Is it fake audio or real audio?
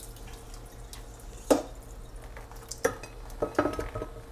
real